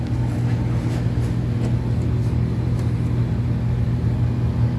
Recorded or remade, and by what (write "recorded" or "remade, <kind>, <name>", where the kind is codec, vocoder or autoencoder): recorded